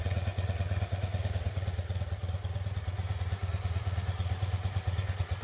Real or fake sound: fake